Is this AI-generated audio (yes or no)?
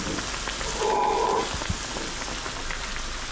no